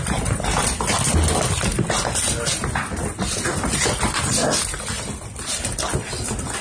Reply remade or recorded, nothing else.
recorded